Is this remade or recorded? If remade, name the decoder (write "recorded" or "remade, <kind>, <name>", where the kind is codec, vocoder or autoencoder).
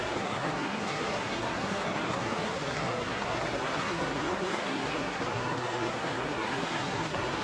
remade, codec, SNAC